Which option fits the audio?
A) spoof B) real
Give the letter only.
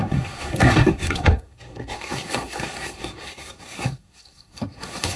A